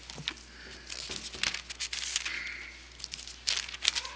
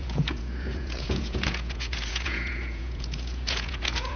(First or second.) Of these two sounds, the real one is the first